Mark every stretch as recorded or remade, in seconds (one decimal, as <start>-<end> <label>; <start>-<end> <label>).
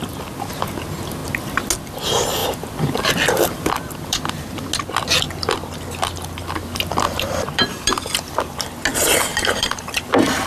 0.0-2.4 recorded; 2.4-4.7 remade; 4.7-6.6 recorded; 6.6-8.7 remade; 8.7-9.3 recorded; 9.3-10.1 remade; 10.1-10.5 recorded